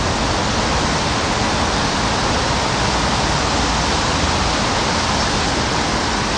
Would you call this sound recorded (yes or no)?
yes